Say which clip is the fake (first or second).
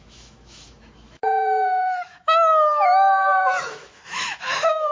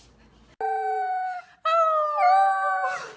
first